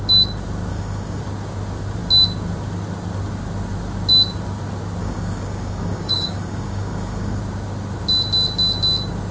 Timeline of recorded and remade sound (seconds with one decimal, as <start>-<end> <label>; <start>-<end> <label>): 0.0-0.7 recorded; 0.7-1.2 remade; 1.2-5.0 recorded; 5.0-7.4 remade; 7.4-9.3 recorded